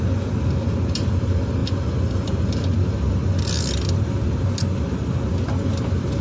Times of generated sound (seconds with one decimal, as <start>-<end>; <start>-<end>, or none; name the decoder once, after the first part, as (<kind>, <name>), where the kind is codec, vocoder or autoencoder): none